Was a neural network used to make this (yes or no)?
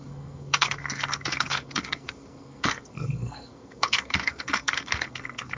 yes